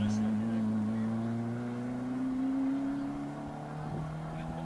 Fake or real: real